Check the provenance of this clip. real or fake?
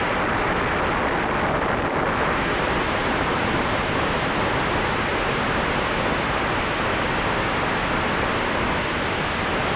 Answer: real